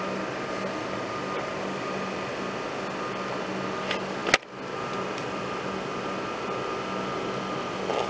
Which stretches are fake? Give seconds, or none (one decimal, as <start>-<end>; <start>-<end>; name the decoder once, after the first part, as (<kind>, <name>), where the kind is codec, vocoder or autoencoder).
none